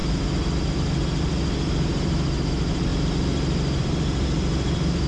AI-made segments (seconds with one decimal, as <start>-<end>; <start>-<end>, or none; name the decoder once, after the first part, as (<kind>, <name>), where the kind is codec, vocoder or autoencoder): 2.5-2.9 (vocoder, BigVGAN v2); 3.8-5.1